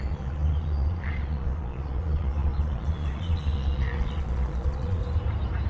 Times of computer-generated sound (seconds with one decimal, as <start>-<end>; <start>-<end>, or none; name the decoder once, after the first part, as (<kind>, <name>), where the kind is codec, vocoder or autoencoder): 0.0-5.0 (vocoder, Vocos)